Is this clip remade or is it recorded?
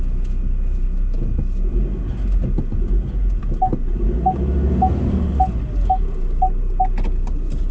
recorded